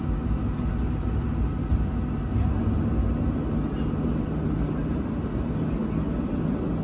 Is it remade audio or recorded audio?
recorded